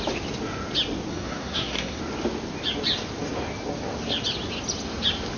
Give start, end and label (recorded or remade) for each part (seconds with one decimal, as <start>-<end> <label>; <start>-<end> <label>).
0.0-1.1 recorded; 1.1-2.0 remade; 2.0-5.4 recorded